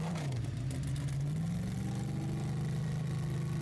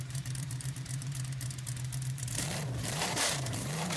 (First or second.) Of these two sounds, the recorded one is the first